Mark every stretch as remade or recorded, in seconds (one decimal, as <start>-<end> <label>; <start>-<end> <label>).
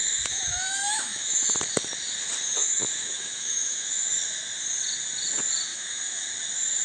0.0-1.6 remade; 1.6-2.6 recorded; 2.6-4.2 remade; 4.2-5.7 recorded; 5.7-6.3 remade; 6.3-6.8 recorded